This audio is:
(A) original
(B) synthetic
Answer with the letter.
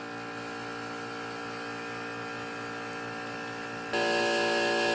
A